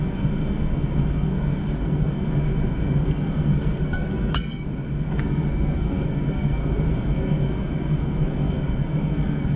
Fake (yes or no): yes